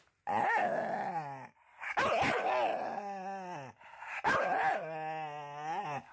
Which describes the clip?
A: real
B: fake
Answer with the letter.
A